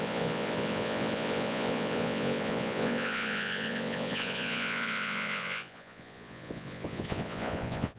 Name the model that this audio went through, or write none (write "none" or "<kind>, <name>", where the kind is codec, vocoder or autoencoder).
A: vocoder, Vocos